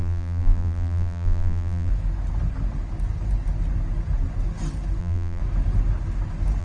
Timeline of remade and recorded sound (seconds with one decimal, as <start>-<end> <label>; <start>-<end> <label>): 0.0-1.9 remade; 1.9-5.0 recorded; 5.0-5.4 remade; 5.4-6.6 recorded